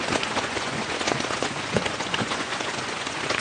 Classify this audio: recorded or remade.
remade